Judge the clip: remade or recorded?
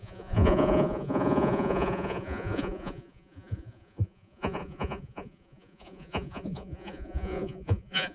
remade